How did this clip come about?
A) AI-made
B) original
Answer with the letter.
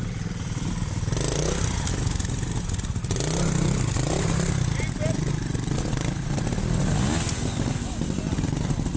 B